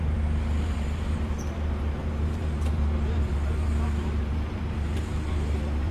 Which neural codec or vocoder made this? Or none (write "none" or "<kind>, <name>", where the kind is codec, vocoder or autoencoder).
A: vocoder, BigVGAN v2